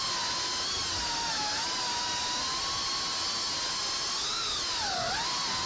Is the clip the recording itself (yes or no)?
yes